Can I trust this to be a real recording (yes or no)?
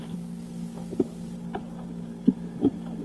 yes